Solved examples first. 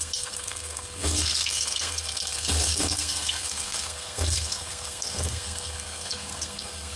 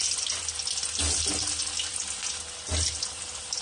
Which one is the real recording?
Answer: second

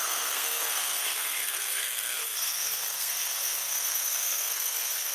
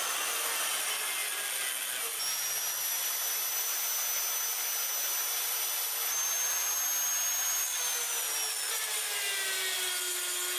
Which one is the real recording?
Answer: second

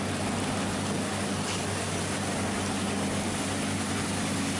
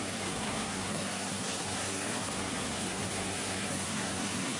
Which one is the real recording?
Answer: first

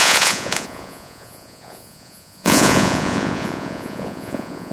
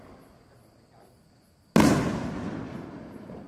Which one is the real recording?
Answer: second